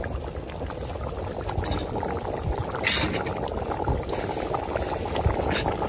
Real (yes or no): yes